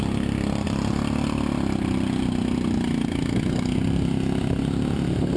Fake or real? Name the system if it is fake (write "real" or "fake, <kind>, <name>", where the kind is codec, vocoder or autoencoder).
real